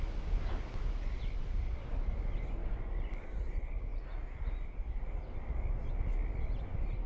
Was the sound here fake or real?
real